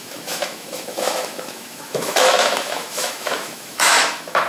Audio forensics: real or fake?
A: fake